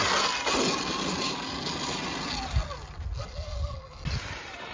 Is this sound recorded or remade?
recorded